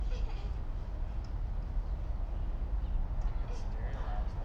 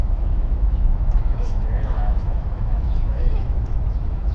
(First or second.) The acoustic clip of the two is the first